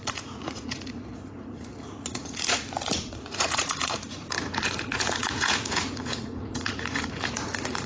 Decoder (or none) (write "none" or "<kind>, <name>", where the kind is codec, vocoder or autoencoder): vocoder, Vocos